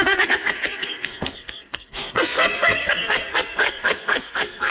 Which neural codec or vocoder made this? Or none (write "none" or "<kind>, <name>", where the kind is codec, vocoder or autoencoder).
codec, SNAC